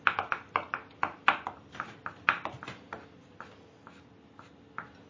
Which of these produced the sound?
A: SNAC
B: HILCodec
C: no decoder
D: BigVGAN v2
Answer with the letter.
C